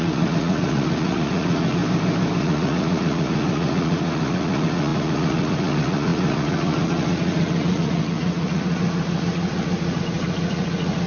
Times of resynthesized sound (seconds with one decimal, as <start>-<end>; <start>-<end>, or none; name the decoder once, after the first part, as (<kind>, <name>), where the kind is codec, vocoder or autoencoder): 0.0-1.8 (vocoder, Vocos); 2.4-11.1